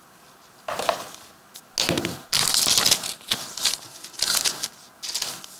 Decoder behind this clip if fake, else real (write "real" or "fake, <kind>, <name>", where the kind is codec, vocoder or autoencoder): real